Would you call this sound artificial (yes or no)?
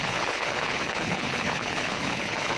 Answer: yes